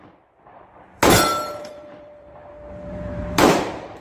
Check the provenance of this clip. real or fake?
fake